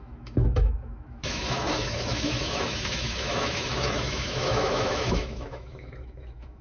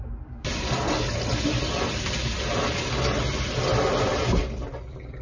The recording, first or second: second